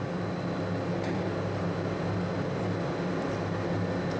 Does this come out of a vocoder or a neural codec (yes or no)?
no